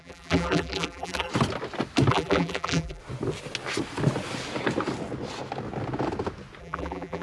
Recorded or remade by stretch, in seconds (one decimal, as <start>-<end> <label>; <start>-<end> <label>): 0.0-1.3 remade; 1.3-2.1 recorded; 2.1-3.0 remade; 3.0-6.6 recorded; 6.6-7.2 remade